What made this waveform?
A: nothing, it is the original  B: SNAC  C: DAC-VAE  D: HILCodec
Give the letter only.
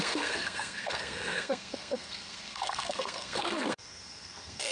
B